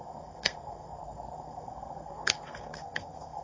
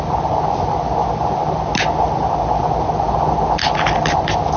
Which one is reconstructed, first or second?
first